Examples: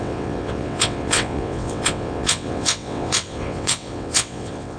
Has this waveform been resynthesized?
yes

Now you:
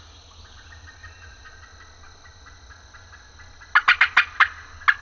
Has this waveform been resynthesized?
no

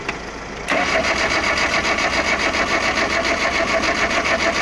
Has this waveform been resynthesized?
no